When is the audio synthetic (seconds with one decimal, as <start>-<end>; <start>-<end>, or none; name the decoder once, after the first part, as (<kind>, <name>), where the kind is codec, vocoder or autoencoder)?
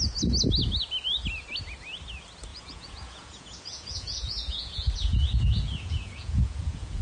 2.5-7.0 (vocoder, Vocos)